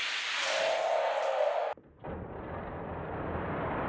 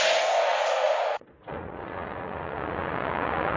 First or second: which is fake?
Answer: second